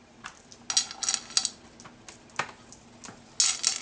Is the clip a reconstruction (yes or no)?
no